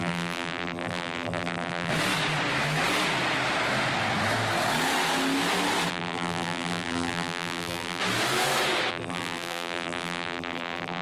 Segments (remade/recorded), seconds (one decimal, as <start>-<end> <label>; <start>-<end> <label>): 0.0-1.9 remade; 1.9-5.9 recorded; 5.9-8.0 remade; 8.0-8.9 recorded; 8.9-11.0 remade